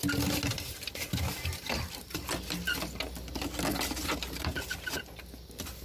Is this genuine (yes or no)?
yes